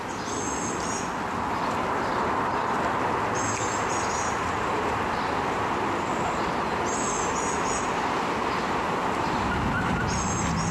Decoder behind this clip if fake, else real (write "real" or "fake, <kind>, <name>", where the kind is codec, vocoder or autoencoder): real